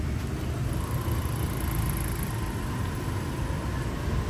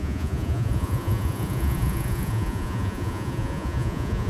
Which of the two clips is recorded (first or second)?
first